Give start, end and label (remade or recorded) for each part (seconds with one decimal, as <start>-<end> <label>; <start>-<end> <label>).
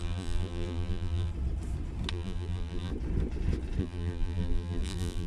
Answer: 0.0-1.3 remade; 1.3-2.1 recorded; 2.1-2.9 remade; 2.9-3.8 recorded; 3.8-5.3 remade